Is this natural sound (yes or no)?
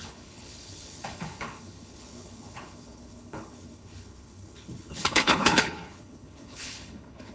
no